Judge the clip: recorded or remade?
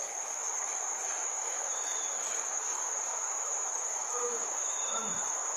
remade